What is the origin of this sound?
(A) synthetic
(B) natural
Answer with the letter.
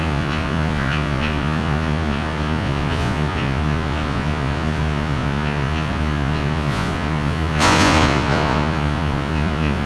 A